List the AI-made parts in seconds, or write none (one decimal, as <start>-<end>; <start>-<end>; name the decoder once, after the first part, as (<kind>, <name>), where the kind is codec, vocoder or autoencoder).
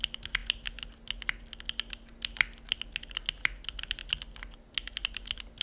none